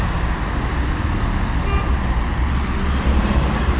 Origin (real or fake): real